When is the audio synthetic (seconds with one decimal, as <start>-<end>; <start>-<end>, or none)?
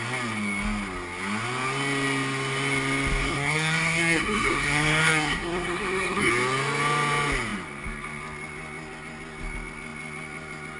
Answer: 3.2-6.3